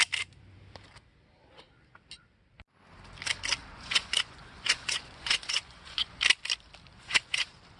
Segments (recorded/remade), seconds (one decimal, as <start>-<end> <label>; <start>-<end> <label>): 0.0-3.6 recorded; 3.6-6.2 remade; 6.2-6.9 recorded; 6.9-7.8 remade